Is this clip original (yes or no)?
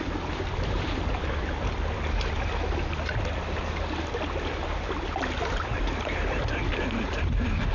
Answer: yes